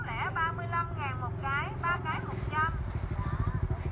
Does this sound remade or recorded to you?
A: recorded